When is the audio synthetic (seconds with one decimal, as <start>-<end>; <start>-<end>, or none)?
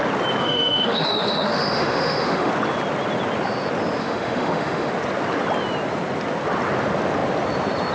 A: 0.4-2.5; 4.0-4.9